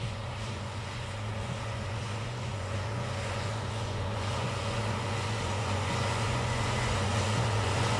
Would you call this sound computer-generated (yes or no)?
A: yes